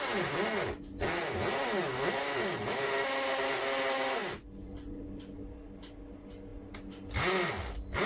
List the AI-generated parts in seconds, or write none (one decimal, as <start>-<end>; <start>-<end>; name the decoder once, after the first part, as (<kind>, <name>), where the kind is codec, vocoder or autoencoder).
none